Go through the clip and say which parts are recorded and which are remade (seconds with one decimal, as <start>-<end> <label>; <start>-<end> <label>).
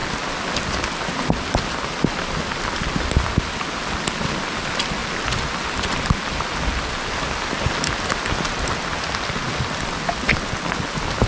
0.0-11.3 recorded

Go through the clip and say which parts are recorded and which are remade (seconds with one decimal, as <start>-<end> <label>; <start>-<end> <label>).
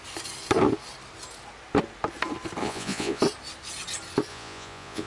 0.0-2.6 recorded; 2.6-3.2 remade; 3.2-4.3 recorded; 4.3-5.1 remade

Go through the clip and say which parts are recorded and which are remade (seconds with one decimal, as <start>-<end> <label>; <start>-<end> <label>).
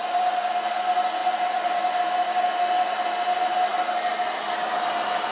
0.0-1.2 recorded; 1.2-2.0 remade; 2.0-5.3 recorded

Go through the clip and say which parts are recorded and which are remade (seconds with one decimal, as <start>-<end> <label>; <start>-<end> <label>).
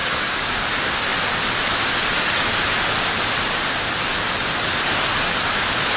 0.0-0.7 remade; 0.7-6.0 recorded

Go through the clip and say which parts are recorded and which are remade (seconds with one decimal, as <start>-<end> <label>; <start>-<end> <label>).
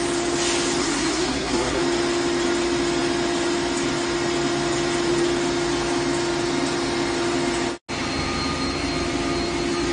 0.0-0.8 recorded; 0.8-1.8 remade; 1.8-9.9 recorded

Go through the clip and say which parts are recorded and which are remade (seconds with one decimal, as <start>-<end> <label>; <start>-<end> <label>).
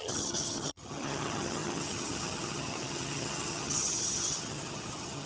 0.0-5.3 remade